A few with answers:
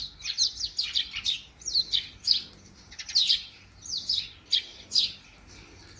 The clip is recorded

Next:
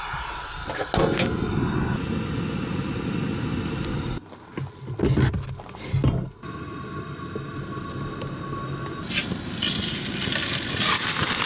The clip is recorded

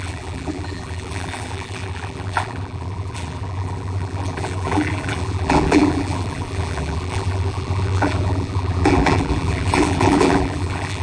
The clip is remade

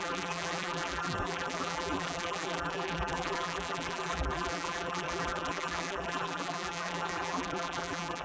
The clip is remade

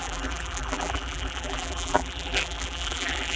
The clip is remade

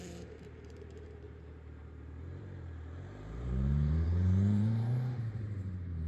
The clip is remade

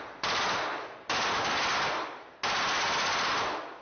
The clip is recorded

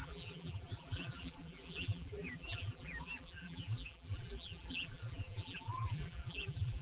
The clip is remade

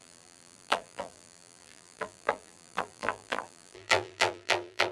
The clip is remade